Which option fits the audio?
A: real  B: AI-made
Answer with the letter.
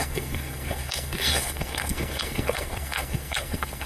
B